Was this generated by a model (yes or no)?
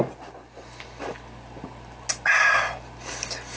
no